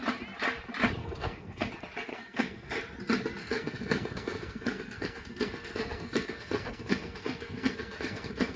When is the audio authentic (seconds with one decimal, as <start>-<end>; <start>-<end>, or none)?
0.0-1.0; 1.7-2.1; 2.7-3.4